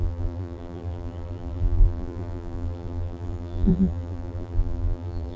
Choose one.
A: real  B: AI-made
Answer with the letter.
B